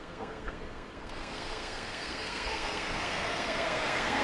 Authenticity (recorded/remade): remade